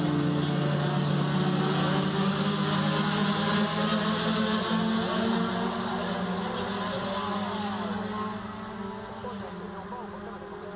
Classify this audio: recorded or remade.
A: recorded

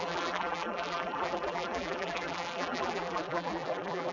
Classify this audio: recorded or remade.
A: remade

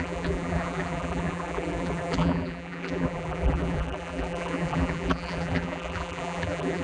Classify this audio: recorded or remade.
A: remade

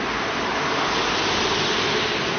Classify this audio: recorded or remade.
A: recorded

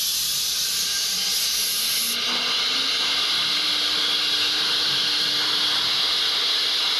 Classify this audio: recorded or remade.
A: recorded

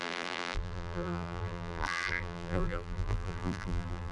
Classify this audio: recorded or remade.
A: remade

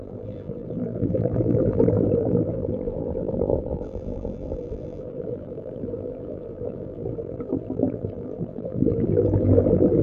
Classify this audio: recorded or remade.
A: remade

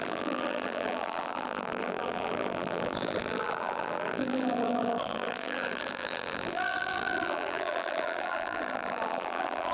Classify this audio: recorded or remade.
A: remade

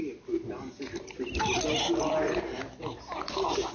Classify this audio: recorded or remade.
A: recorded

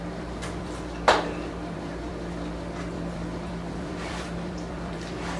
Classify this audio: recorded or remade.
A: remade